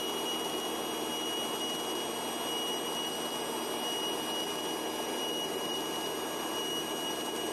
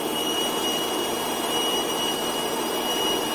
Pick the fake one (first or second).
second